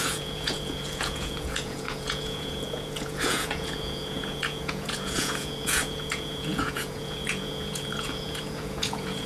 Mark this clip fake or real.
fake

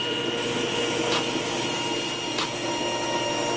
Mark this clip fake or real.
real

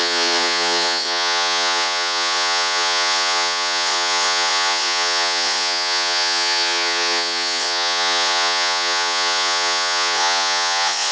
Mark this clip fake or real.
fake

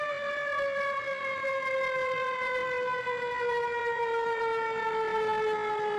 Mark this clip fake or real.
real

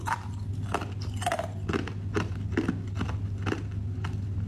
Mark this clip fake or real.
real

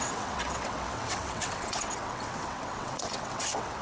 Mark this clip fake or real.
fake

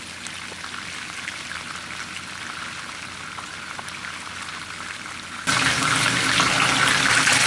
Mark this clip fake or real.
real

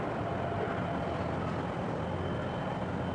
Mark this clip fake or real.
real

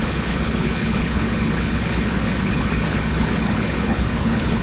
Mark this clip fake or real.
fake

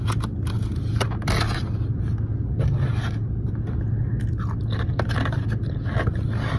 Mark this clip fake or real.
real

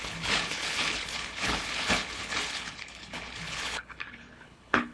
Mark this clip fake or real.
fake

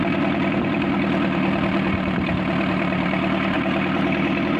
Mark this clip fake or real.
fake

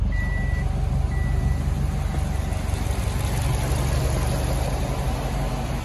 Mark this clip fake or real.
real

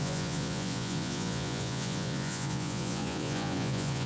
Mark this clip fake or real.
fake